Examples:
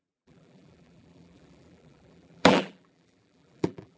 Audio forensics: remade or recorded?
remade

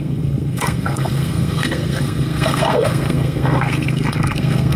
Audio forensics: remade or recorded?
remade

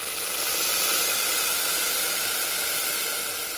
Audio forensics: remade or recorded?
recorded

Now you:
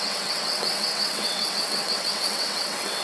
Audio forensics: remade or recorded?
remade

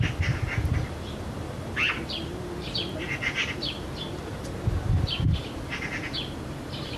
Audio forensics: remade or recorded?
remade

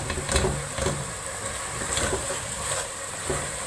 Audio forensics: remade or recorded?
recorded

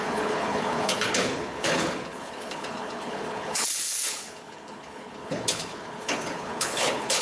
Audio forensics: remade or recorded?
remade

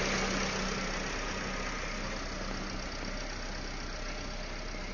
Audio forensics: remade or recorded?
recorded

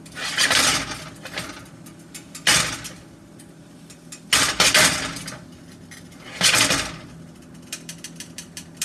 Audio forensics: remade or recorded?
recorded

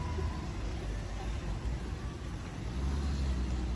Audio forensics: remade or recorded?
recorded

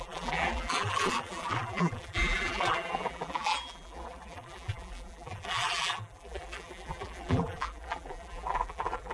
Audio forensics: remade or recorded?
remade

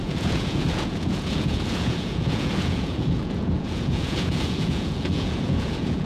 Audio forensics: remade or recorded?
remade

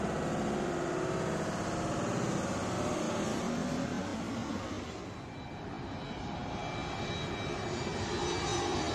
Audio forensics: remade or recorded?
recorded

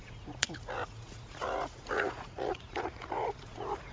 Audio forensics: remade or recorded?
remade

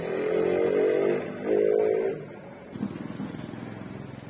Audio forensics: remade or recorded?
recorded